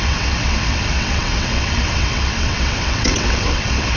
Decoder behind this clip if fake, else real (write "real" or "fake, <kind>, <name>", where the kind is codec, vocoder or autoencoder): fake, vocoder, WaveNeXt